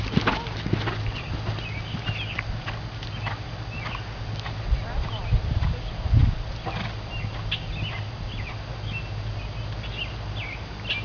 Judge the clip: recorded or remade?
recorded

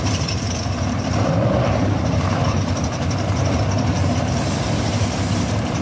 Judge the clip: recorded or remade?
remade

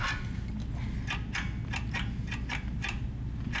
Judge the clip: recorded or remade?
recorded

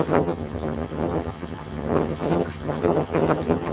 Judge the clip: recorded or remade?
remade